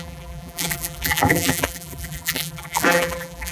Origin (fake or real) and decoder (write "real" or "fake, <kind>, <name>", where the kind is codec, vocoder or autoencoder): fake, vocoder, BigVGAN v2